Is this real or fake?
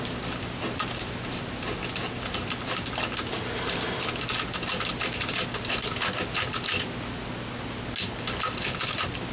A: real